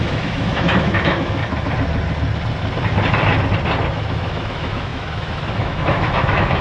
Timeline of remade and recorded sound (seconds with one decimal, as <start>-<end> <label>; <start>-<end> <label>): 0.0-1.4 remade; 1.4-3.9 recorded; 3.9-6.6 remade